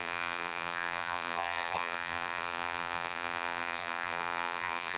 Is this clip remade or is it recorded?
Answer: remade